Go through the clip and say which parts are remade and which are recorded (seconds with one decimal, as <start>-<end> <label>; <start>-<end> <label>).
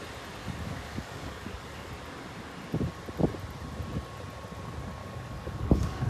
0.0-0.4 recorded; 0.4-1.9 remade; 1.9-5.0 recorded; 5.0-6.1 remade